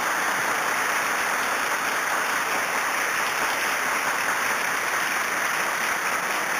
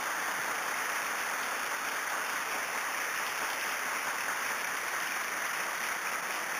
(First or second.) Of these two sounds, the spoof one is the second